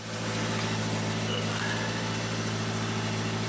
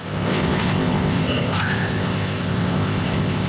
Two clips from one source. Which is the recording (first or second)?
first